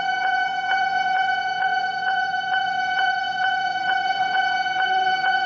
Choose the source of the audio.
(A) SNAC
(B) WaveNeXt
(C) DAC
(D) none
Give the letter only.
B